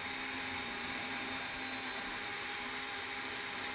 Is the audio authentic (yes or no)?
yes